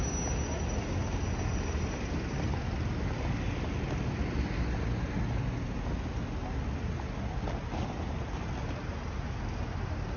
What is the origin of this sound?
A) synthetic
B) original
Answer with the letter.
B